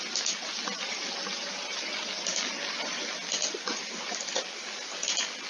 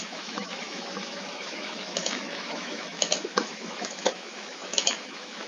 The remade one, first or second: second